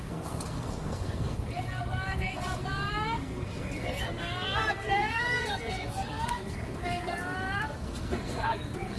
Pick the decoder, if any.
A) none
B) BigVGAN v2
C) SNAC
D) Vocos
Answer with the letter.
C